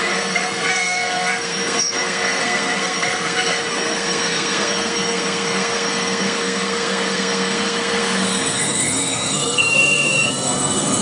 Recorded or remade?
remade